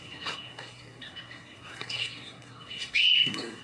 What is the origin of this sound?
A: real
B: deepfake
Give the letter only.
B